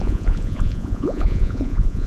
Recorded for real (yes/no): no